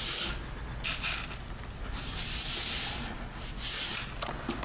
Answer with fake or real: real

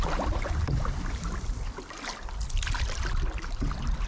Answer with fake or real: real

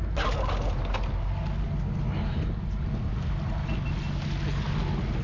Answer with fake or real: real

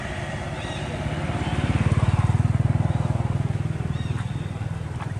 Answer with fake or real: real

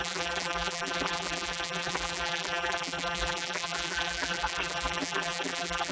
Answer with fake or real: fake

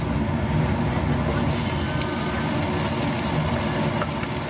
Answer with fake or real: real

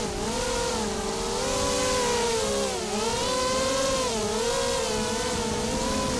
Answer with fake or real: real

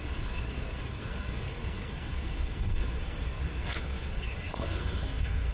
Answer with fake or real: fake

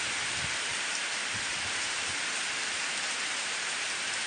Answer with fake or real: real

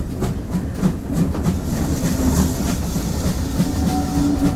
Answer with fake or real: real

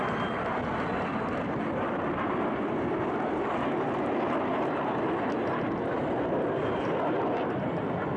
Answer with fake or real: real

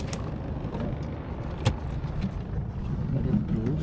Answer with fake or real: real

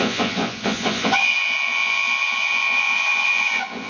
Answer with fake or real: fake